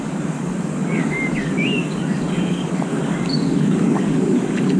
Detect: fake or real fake